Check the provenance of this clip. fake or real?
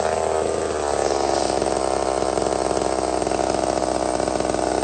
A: real